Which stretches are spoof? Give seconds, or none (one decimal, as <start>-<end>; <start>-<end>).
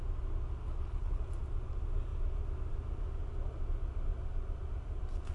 0.6-1.2